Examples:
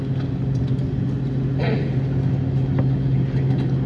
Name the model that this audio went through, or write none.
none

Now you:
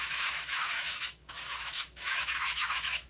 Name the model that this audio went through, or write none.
autoencoder, DAC-VAE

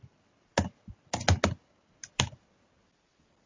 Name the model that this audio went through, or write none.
none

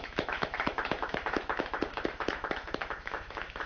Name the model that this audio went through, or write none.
autoencoder, DAC-VAE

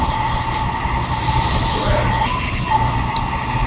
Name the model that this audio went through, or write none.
none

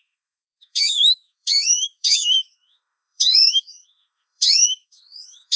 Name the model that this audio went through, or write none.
autoencoder, DAC-VAE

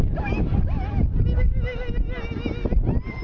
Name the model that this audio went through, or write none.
none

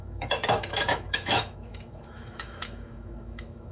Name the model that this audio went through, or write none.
autoencoder, DAC-VAE